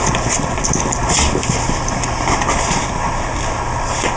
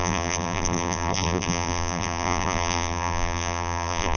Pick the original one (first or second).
first